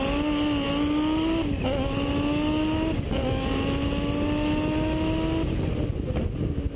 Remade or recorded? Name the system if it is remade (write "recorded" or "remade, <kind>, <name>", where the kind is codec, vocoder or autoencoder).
recorded